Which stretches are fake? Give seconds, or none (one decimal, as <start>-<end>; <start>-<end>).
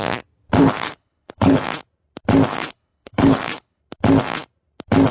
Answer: 0.6-1.6; 2.5-3.8